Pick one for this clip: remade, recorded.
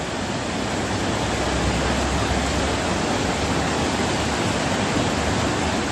recorded